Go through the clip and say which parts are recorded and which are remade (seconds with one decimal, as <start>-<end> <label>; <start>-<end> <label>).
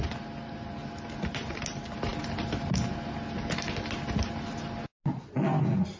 0.0-6.0 recorded